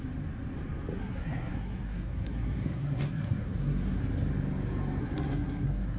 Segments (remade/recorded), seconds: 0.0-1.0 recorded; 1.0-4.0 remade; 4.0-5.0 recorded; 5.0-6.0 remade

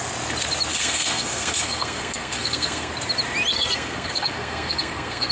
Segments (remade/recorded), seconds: 0.0-0.7 recorded; 0.7-2.9 remade; 2.9-3.5 recorded; 3.5-5.3 remade